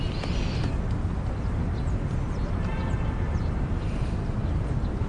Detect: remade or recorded recorded